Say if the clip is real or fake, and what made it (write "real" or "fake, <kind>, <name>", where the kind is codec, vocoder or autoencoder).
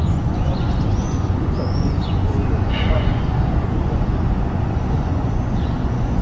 fake, vocoder, Vocos